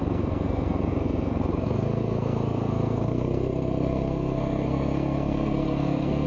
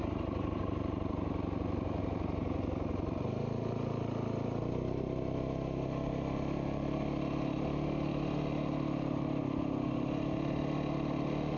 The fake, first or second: first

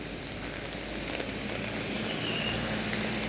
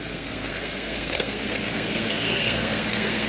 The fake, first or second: second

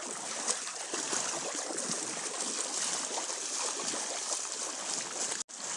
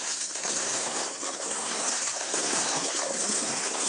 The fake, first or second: second